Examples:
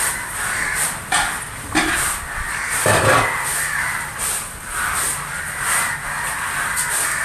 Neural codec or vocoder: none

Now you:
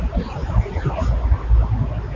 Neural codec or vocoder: none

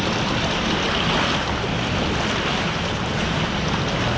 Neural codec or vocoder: none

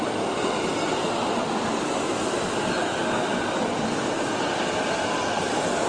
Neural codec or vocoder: none